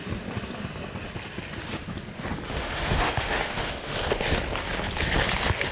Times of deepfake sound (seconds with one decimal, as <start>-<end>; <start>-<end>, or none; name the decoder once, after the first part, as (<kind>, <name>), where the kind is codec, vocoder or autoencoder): 2.5-3.9 (autoencoder, DAC-VAE)